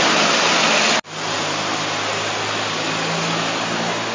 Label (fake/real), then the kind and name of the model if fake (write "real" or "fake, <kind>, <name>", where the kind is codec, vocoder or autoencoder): real